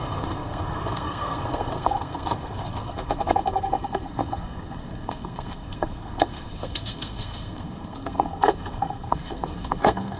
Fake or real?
fake